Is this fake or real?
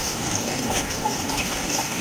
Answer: fake